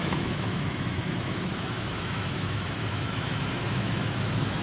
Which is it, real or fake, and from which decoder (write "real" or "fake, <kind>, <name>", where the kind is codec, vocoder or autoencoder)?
fake, autoencoder, DAC-VAE